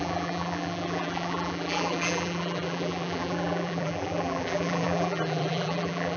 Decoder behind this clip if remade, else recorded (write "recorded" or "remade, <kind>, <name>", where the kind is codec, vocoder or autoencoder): remade, vocoder, BigVGAN v2